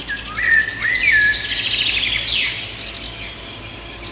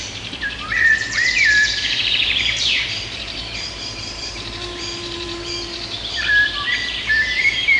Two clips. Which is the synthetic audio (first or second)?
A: second